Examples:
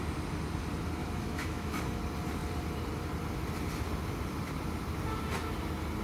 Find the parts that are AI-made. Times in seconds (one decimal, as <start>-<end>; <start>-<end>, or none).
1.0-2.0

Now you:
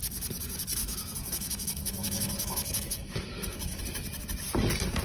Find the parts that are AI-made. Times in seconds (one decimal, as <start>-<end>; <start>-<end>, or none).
0.8-3.8

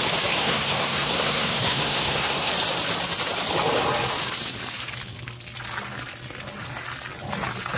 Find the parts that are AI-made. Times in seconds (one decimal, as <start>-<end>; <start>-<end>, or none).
0.4-2.5

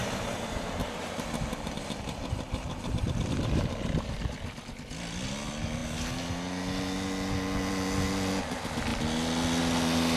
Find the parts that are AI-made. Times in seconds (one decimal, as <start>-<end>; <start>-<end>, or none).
0.0-4.2